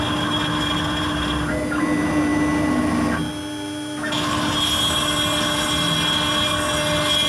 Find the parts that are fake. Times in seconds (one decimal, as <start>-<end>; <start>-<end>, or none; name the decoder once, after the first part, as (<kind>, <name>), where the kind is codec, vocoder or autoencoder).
none

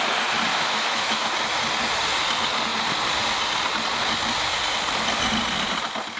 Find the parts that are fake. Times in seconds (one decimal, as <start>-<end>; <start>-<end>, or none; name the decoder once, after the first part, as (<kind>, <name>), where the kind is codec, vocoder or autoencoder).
0.5-1.3 (autoencoder, DAC-VAE)

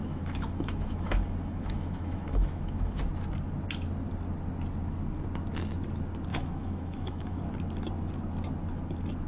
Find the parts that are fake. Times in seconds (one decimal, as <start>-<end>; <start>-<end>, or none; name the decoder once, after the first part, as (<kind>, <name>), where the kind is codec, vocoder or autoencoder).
0.0-3.0 (autoencoder, DAC-VAE); 6.3-7.4

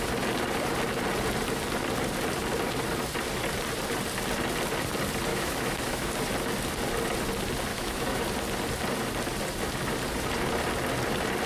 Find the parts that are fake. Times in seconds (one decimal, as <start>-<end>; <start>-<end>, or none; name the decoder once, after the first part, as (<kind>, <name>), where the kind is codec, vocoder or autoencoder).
5.3-6.1 (autoencoder, DAC-VAE); 7.7-8.2

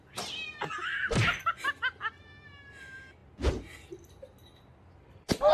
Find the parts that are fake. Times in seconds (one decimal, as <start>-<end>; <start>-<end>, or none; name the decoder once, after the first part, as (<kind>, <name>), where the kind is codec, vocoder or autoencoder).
none

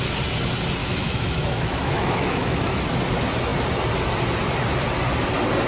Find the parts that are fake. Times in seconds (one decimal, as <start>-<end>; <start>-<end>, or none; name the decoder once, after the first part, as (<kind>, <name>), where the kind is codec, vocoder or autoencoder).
0.8-2.8 (autoencoder, DAC-VAE)

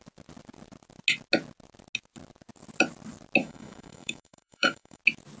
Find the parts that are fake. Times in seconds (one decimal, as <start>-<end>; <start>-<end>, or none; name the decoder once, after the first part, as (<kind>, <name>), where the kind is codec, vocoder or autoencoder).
3.4-5.0 (autoencoder, DAC-VAE)

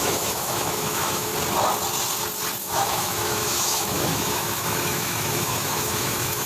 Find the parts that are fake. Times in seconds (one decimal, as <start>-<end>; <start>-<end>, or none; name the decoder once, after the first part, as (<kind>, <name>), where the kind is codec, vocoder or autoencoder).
0.0-1.3 (autoencoder, DAC-VAE); 2.6-6.5